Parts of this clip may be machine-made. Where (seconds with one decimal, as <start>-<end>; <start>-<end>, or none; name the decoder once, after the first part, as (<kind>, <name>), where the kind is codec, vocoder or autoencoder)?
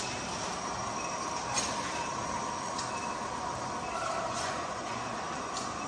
4.2-5.9 (vocoder, Vocos)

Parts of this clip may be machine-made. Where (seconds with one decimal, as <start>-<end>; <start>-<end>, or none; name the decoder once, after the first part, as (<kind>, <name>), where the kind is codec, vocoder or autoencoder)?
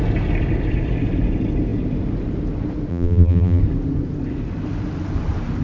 2.9-3.6 (vocoder, BigVGAN v2)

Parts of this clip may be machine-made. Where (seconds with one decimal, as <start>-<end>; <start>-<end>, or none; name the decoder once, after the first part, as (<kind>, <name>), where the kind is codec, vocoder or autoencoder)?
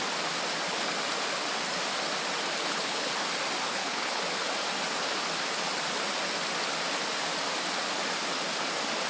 2.6-3.1 (codec, HILCodec); 3.7-4.2